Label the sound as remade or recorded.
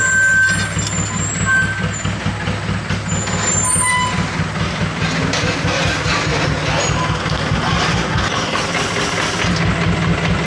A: recorded